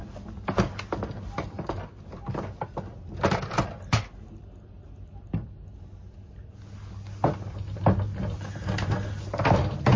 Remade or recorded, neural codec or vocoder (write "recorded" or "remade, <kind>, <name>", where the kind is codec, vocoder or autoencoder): recorded